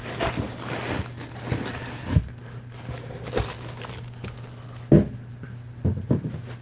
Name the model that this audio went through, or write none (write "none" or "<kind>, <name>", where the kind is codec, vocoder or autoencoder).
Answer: vocoder, BigVGAN v2